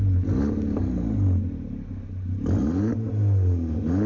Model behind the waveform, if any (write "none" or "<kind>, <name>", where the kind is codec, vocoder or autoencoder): none